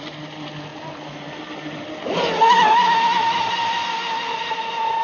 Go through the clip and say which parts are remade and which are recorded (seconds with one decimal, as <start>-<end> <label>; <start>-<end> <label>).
0.0-5.0 recorded